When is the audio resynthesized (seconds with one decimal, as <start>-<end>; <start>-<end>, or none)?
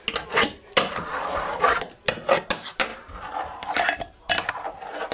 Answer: none